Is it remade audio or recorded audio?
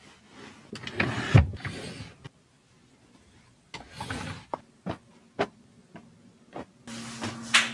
recorded